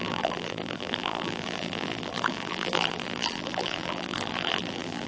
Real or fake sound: fake